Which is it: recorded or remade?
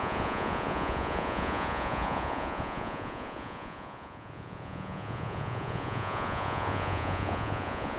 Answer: remade